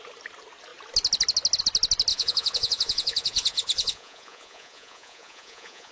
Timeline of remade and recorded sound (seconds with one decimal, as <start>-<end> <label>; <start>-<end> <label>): 0.0-2.1 recorded; 2.1-5.9 remade